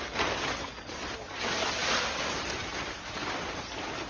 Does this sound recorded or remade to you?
recorded